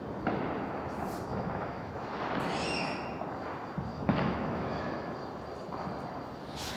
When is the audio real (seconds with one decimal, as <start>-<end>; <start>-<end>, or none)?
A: 0.0-1.3; 1.9-3.9; 5.1-6.8